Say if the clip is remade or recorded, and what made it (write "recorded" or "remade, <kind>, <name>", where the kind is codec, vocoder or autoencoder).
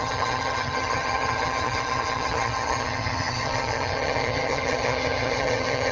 remade, vocoder, HiFi-GAN